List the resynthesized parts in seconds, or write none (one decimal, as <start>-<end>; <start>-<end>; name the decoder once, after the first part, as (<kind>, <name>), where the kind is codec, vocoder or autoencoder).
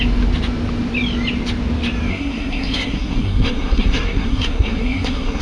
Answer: 2.1-5.4 (codec, SNAC)